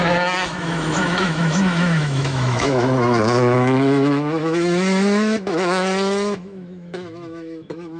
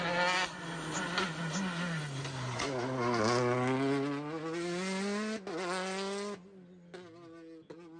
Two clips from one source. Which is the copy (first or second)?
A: first